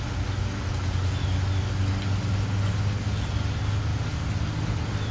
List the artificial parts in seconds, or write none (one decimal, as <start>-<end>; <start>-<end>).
none

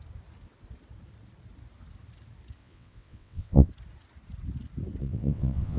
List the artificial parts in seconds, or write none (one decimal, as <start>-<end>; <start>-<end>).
2.6-3.7; 5.0-5.8

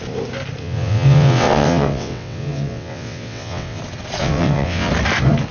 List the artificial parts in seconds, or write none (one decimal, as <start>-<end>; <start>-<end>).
0.6-3.8; 4.2-4.9

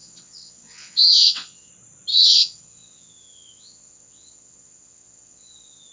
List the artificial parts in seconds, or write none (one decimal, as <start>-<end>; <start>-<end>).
0.0-1.7; 2.1-5.9

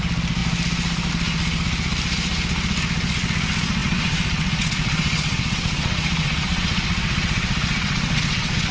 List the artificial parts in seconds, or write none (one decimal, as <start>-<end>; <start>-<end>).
3.8-8.7

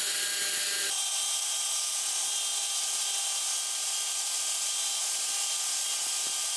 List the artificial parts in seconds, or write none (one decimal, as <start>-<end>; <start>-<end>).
none

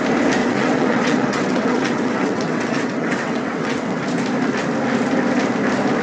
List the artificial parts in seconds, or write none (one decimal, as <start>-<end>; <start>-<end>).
0.4-4.0